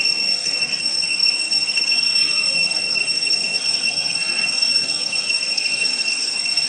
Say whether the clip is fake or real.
fake